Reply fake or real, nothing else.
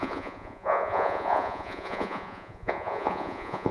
fake